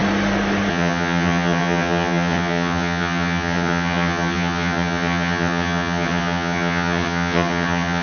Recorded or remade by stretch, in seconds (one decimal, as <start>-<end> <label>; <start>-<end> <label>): 0.0-0.7 recorded; 0.7-8.0 remade